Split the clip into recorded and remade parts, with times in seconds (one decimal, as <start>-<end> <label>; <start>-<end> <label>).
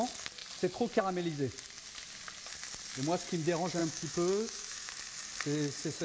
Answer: 0.0-3.8 recorded; 3.8-5.0 remade; 5.0-6.0 recorded